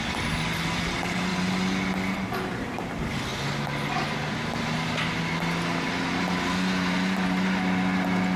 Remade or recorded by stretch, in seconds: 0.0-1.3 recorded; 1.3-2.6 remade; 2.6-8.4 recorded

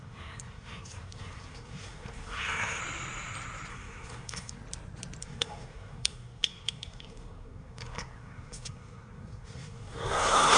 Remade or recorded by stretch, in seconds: 0.0-2.8 remade; 2.8-3.7 recorded; 3.7-4.6 remade; 4.6-5.2 recorded; 5.2-10.6 remade

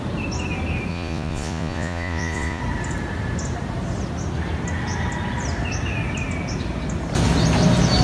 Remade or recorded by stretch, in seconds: 0.0-0.9 recorded; 0.9-2.6 remade; 2.6-8.0 recorded